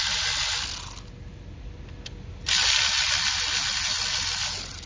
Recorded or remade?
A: recorded